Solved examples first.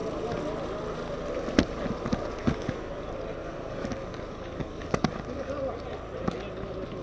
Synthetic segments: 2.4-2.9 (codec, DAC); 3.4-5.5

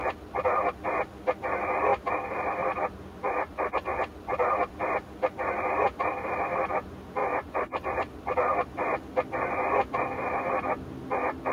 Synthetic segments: 1.9-3.7 (vocoder, BigVGAN v2); 4.3-6.7; 7.2-9.0

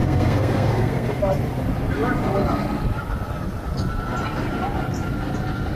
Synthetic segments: 0.0-1.2 (codec, SNAC)

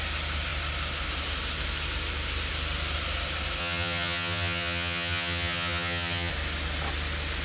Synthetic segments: 3.6-6.3 (vocoder, HiFi-GAN)

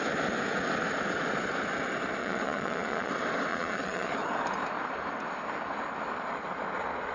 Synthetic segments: 2.2-3.1 (vocoder, Vocos); 3.5-4.1

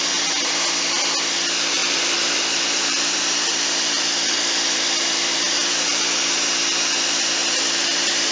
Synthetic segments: 1.8-6.2 (vocoder, BigVGAN v2); 7.4-8.3

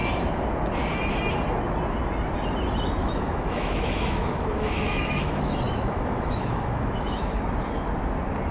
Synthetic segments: 3.0-7.4 (autoencoder, DAC-VAE)